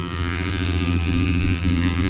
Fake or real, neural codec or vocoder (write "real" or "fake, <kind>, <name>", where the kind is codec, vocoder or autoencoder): fake, vocoder, BigVGAN v2